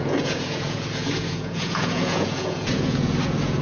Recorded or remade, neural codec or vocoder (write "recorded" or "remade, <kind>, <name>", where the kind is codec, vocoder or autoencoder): remade, vocoder, Vocos